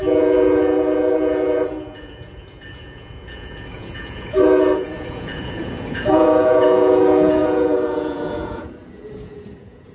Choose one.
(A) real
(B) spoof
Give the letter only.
B